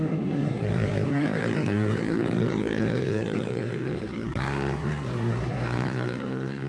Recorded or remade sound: remade